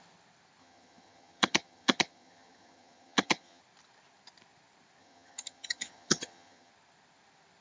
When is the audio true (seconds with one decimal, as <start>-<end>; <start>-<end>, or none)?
0.0-0.6; 3.6-5.0; 6.7-7.6